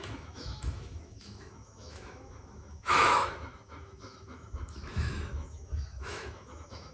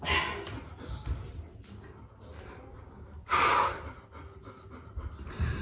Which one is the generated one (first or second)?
first